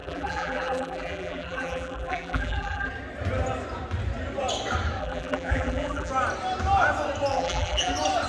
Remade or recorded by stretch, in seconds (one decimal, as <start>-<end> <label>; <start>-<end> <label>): 0.0-2.9 remade; 2.9-5.0 recorded; 5.0-6.1 remade; 6.1-7.3 recorded; 7.3-7.9 remade; 7.9-8.3 recorded